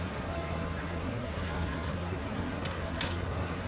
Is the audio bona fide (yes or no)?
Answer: no